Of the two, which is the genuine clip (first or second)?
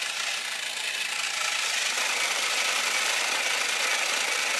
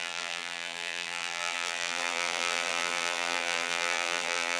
first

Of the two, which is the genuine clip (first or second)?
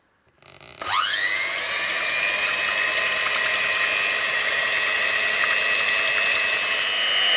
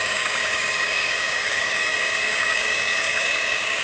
first